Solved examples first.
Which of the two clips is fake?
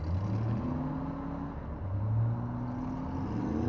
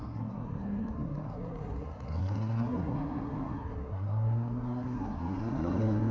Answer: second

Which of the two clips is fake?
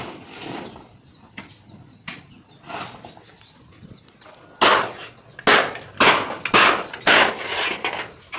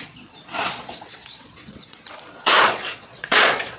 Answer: second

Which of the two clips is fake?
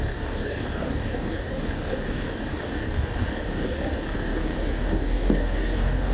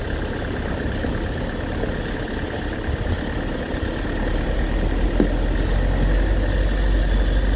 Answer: first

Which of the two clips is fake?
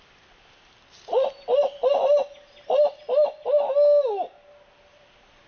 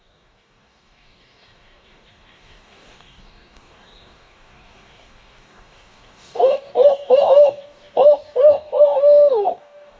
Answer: second